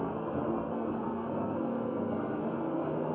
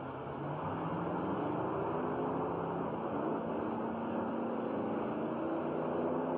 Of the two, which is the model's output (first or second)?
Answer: first